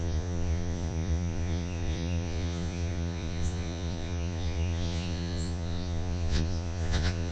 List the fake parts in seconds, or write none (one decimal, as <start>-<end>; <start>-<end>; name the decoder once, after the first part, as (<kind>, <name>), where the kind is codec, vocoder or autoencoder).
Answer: 0.0-7.3 (vocoder, Vocos)